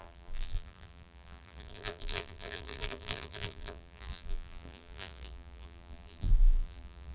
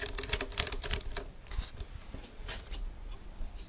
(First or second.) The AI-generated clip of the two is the first